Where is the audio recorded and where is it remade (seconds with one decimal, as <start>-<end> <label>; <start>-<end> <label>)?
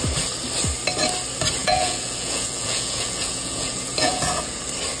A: 0.0-1.6 recorded; 1.6-4.6 remade; 4.6-5.0 recorded